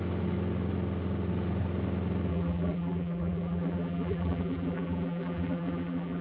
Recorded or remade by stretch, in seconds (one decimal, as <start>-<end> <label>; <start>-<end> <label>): 0.0-2.3 recorded; 2.3-6.2 remade